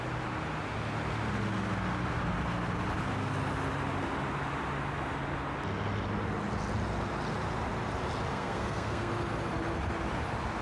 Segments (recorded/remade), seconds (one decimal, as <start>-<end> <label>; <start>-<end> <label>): 0.0-8.3 recorded; 8.3-9.1 remade; 9.1-10.6 recorded